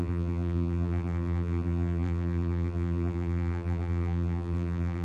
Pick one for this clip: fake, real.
fake